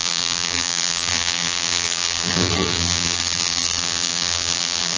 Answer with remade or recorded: remade